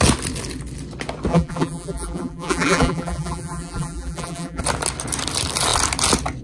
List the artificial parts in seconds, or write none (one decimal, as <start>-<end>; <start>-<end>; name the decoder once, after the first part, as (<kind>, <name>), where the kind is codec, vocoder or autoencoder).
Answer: 1.3-4.6 (vocoder, BigVGAN v2)